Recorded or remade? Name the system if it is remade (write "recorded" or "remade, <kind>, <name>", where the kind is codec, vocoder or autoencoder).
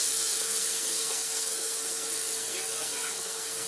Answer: remade, codec, SNAC